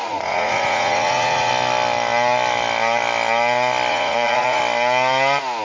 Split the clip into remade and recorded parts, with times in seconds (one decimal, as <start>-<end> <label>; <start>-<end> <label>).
0.0-1.5 remade; 1.5-3.9 recorded; 3.9-4.6 remade; 4.6-5.6 recorded